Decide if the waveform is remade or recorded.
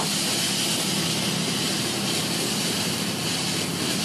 recorded